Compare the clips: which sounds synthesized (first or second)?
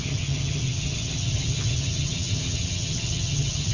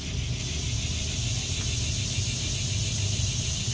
first